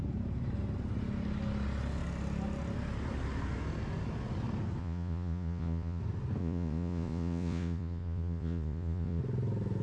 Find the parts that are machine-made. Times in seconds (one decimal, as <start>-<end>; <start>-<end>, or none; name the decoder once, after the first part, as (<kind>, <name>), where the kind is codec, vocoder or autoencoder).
4.8-6.0 (vocoder, Vocos); 6.4-9.2